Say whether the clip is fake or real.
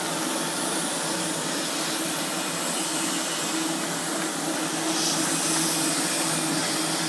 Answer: real